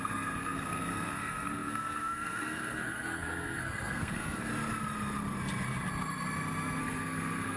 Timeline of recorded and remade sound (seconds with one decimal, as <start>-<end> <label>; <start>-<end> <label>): 0.0-4.5 remade; 4.5-6.8 recorded; 6.8-7.6 remade

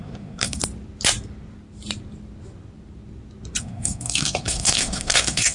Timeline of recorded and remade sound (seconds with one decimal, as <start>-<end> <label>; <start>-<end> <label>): 0.0-0.6 remade; 0.6-3.6 recorded; 3.6-5.5 remade

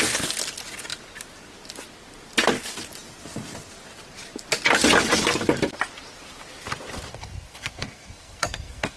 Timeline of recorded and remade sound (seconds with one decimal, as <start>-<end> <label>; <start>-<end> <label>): 0.0-7.1 recorded; 7.1-9.0 remade

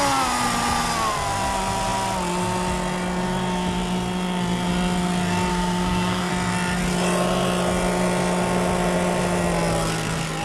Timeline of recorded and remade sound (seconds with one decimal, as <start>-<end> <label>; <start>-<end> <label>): 0.0-5.5 recorded; 5.5-6.3 remade; 6.3-10.4 recorded

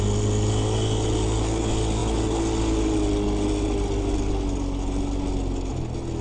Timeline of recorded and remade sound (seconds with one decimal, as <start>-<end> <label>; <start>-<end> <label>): 0.0-6.2 recorded

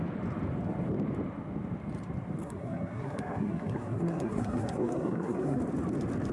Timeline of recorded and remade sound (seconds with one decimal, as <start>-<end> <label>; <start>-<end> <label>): 0.0-2.4 recorded; 2.4-5.6 remade; 5.6-6.3 recorded

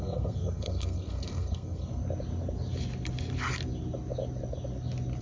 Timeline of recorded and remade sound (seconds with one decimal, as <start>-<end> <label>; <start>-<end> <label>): 0.0-2.0 remade; 2.0-5.2 recorded

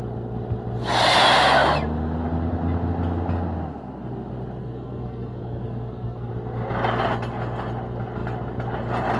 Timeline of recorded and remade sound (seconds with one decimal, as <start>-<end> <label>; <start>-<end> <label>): 0.0-4.6 recorded; 4.6-6.3 remade; 6.3-9.2 recorded